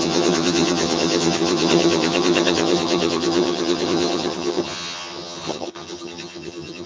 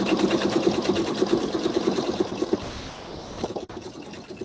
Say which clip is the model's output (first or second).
first